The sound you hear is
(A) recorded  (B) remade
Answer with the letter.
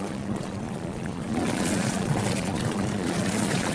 B